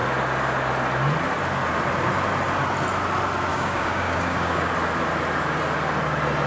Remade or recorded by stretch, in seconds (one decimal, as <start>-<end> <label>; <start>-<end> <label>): 0.0-3.5 recorded; 3.5-4.7 remade; 4.7-6.5 recorded

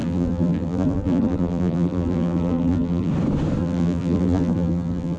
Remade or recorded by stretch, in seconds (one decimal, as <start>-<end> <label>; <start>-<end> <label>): 0.0-3.1 remade; 3.1-3.6 recorded; 3.6-5.2 remade

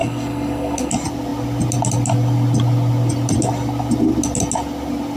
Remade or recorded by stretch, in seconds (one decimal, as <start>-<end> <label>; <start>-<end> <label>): 0.0-0.9 remade; 0.9-5.2 recorded

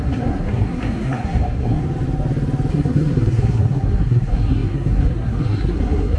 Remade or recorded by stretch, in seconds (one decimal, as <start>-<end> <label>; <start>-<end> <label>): 0.0-1.8 remade; 1.8-2.7 recorded; 2.7-6.2 remade

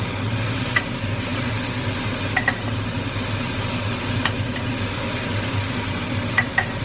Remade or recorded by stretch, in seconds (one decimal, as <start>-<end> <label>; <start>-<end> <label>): 0.0-6.8 recorded

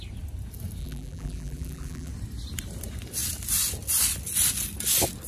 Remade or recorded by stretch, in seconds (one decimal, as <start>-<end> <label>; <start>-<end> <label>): 0.0-0.8 recorded; 0.8-2.1 remade; 2.1-5.3 recorded

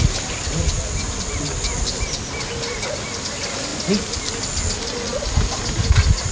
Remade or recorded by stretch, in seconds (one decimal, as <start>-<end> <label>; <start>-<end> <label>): 0.0-6.3 recorded